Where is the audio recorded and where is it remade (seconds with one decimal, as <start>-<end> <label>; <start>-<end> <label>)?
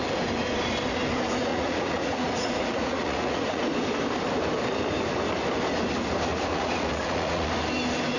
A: 0.0-1.5 recorded; 1.5-3.6 remade; 3.6-6.3 recorded; 6.3-7.5 remade; 7.5-8.2 recorded